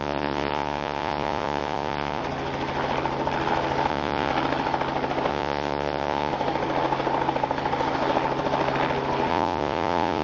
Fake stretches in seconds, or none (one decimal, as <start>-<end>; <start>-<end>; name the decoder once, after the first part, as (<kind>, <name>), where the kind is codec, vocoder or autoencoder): 0.0-2.2 (vocoder, Vocos); 3.9-4.3; 5.3-6.3; 9.3-10.2